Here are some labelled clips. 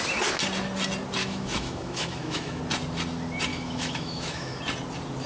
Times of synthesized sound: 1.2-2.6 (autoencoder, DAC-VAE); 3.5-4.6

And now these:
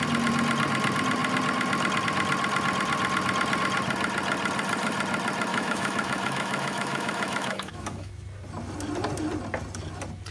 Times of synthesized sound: 5.5-8.1 (autoencoder, DAC-VAE)

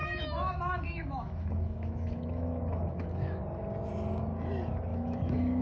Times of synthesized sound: 0.0-3.4 (autoencoder, DAC-VAE); 4.9-5.6

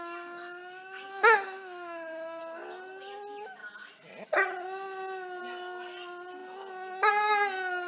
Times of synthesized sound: 1.1-2.4 (autoencoder, DAC-VAE)

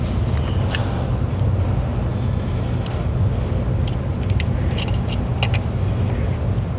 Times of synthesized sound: 2.1-2.6 (autoencoder, DAC-VAE)